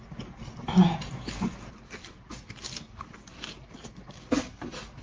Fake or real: real